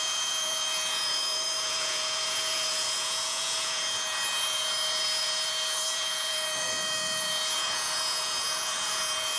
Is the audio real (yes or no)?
no